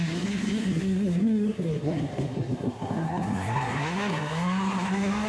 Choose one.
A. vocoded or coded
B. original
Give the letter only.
A